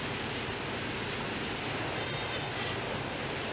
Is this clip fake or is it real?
real